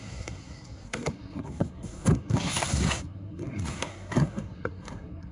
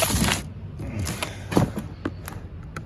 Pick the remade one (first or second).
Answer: first